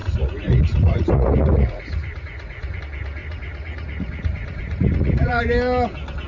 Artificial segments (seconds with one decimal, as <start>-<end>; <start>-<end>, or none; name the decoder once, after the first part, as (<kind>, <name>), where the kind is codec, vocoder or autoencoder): 0.0-2.8 (vocoder, Vocos); 3.2-5.4